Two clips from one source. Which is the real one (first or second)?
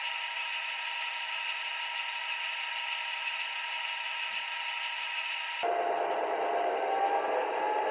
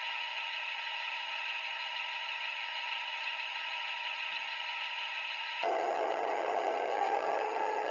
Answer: first